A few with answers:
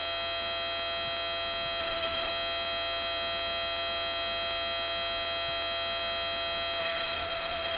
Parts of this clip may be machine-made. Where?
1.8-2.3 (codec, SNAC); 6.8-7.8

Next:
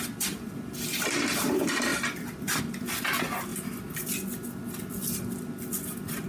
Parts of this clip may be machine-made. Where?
0.0-3.5 (vocoder, BigVGAN v2); 4.7-6.3

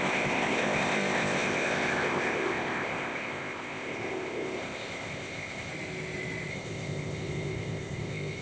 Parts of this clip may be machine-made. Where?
0.0-5.7 (codec, ZipCodec); 6.5-8.4

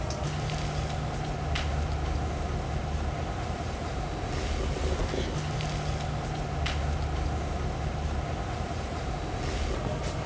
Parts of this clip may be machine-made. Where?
none